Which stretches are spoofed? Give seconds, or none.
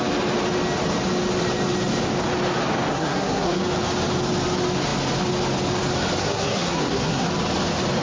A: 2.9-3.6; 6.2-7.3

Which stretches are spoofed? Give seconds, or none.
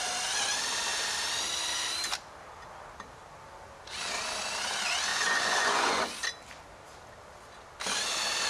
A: 5.1-6.0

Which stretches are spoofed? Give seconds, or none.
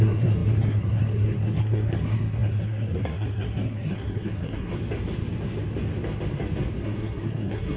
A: 0.0-4.7; 6.8-7.8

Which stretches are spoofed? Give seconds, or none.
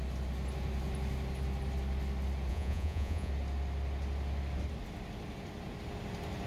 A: 2.5-3.3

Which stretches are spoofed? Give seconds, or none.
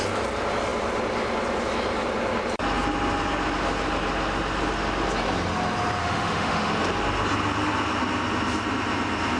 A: 6.0-6.7